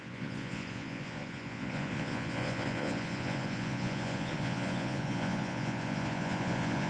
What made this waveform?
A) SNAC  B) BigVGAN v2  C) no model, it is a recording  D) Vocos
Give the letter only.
D